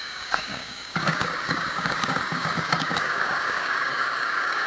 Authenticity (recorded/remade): remade